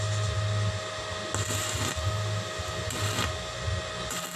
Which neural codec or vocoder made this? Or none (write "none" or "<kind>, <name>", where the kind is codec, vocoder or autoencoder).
none